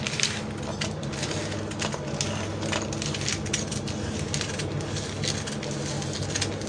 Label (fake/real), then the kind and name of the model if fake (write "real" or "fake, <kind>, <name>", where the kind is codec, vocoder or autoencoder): real